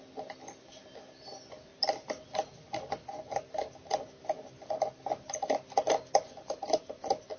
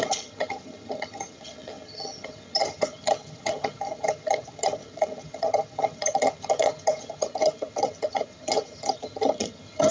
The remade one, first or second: second